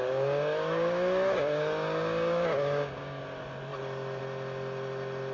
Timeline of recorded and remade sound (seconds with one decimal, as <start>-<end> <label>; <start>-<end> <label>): 0.0-3.2 remade; 3.2-5.3 recorded